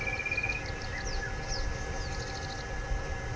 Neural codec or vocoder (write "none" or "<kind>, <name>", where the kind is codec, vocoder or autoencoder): none